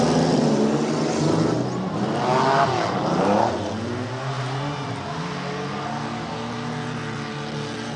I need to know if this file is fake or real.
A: real